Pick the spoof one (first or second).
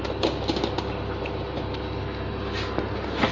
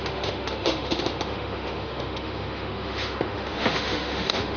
second